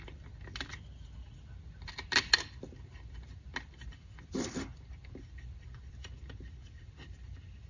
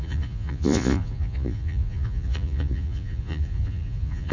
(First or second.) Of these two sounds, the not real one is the second